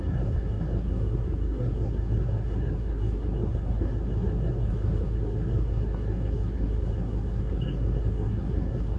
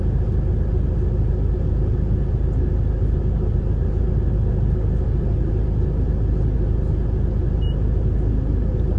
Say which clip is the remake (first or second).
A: first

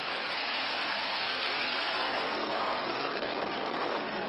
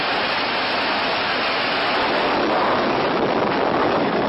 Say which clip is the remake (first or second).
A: first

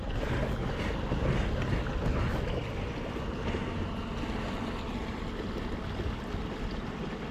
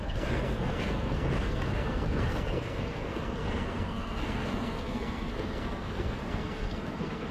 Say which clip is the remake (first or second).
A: second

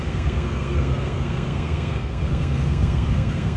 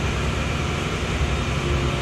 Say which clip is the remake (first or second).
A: first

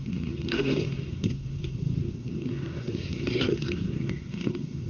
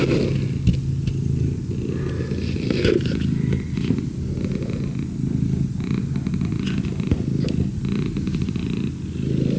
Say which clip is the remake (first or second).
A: first